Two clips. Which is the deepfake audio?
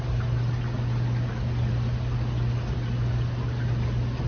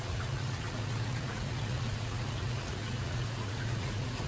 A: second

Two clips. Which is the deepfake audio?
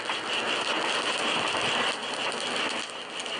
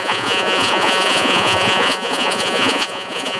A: second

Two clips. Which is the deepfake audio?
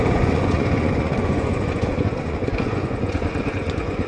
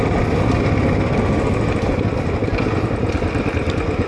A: first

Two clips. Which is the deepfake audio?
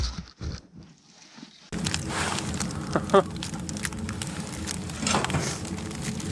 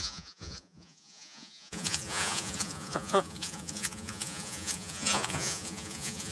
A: second